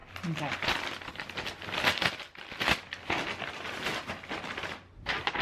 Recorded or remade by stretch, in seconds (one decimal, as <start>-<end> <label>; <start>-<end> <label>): 0.0-5.4 recorded